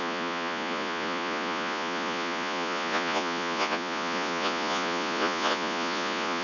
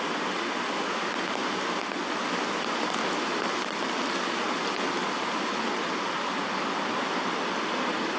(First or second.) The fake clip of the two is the first